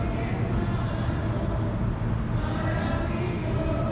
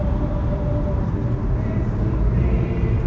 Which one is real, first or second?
first